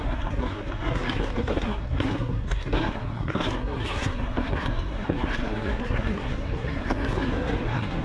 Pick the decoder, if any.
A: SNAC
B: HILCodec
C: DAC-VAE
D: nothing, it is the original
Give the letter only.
A